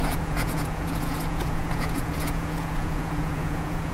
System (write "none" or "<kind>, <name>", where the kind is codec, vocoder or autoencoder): vocoder, Vocos